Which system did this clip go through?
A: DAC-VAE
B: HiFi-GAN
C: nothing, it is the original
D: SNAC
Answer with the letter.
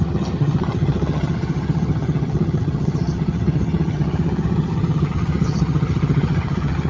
B